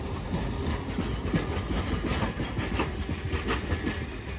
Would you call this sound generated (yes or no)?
no